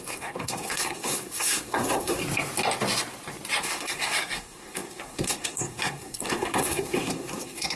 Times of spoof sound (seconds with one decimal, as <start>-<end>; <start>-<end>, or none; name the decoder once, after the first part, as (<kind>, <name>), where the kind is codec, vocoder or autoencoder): 0.0-2.2 (codec, SNAC); 3.6-7.8